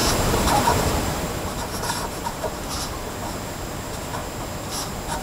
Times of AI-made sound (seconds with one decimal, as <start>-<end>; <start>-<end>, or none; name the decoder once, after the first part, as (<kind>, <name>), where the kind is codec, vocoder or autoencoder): 0.0-3.1 (vocoder, BigVGAN v2)